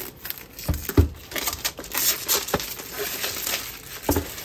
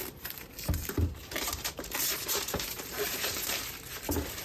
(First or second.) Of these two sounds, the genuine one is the first